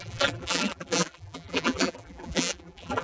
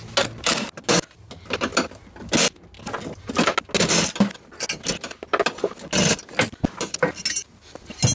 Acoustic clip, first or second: second